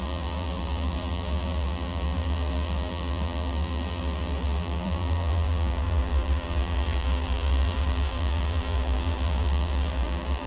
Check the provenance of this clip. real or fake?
fake